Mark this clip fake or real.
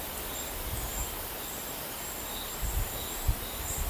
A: real